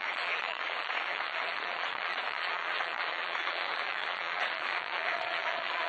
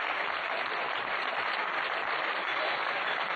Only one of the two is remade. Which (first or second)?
first